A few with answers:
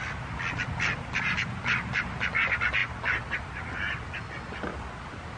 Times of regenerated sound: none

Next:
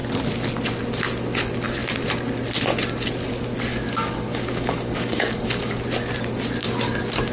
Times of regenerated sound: 3.7-5.8 (codec, DAC); 6.6-7.3

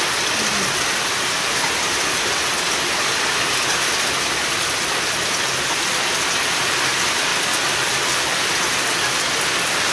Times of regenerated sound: none

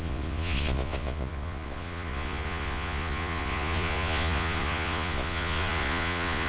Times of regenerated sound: 0.0-6.5 (vocoder, Vocos)

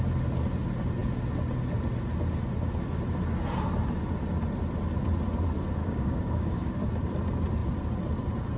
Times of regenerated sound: 5.8-6.8 (codec, DAC)